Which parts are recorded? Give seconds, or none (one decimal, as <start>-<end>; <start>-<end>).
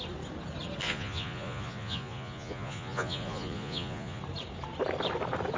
0.0-0.8; 4.2-5.6